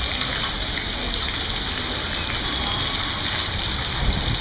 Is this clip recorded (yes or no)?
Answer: yes